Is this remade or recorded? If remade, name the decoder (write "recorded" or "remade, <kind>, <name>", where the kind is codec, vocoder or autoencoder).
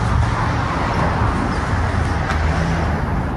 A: recorded